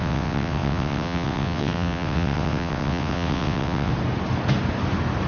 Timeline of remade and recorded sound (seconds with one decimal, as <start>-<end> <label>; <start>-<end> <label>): 0.0-3.9 remade; 3.9-5.3 recorded